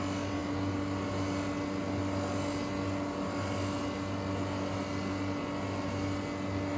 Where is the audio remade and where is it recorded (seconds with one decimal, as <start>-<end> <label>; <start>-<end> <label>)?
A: 0.0-6.8 recorded